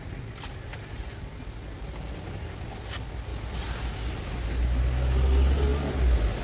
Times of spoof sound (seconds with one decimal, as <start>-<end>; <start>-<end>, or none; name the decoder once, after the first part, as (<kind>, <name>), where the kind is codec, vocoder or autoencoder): none